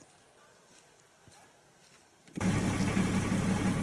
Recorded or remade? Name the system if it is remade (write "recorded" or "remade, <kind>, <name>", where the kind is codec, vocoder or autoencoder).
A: recorded